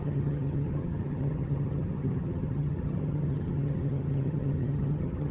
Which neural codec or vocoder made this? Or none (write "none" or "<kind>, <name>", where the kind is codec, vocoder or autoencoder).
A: vocoder, HiFi-GAN